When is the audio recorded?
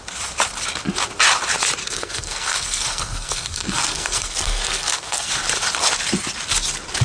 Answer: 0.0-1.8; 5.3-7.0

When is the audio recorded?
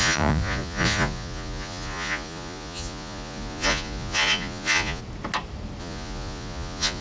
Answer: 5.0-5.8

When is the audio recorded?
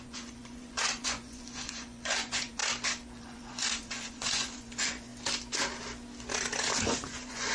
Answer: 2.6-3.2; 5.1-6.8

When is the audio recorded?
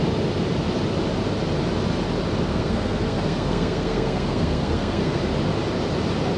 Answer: 0.0-2.5; 5.2-6.4